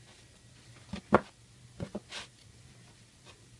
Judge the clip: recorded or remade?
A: recorded